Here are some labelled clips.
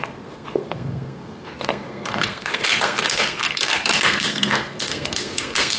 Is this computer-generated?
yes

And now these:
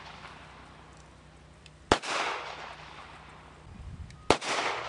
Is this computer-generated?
no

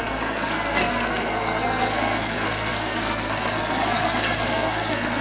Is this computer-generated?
yes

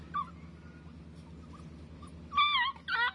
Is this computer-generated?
no